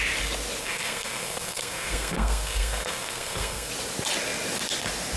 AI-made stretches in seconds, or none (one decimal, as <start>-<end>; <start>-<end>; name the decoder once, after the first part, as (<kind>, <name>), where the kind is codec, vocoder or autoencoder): 0.6-3.7 (codec, SNAC)

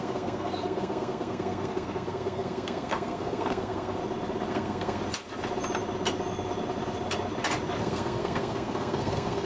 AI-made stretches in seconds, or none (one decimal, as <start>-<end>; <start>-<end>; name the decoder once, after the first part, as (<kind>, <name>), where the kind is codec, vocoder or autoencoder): 0.0-4.0 (codec, SNAC); 4.5-5.0; 7.8-9.5

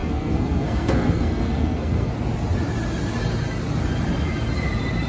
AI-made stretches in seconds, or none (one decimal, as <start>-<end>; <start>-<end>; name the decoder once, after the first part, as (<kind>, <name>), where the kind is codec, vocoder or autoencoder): 0.0-2.1 (codec, SNAC)

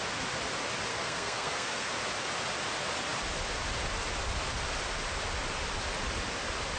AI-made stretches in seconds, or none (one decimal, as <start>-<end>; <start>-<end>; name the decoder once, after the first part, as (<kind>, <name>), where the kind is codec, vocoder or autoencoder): 0.9-1.9 (codec, SNAC)

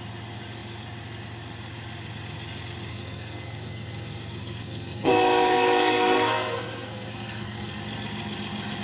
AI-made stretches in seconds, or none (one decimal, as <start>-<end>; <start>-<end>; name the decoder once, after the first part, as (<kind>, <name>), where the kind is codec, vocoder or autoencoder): 2.9-7.8 (codec, SNAC)